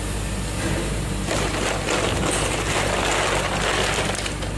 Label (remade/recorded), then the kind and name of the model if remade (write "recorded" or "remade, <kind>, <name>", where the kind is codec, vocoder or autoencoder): recorded